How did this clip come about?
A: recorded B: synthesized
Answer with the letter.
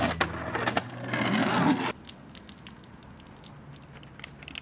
A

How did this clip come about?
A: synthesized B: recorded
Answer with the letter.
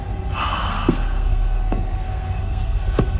A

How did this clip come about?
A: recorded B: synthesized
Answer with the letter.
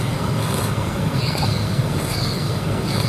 B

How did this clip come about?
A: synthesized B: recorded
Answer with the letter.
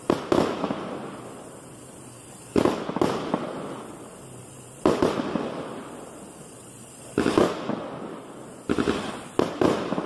B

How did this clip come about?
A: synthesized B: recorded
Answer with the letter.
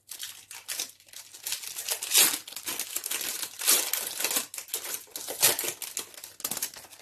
B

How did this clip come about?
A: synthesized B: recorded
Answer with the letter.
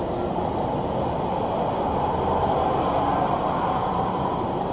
B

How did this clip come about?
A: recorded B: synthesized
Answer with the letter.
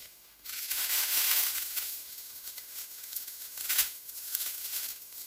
B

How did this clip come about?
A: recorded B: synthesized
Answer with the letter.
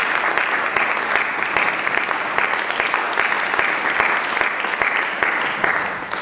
A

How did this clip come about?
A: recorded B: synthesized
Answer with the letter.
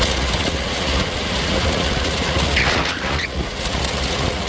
B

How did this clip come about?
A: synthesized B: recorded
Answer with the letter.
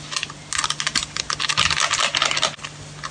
B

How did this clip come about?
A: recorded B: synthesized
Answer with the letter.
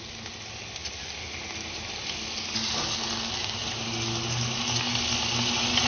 A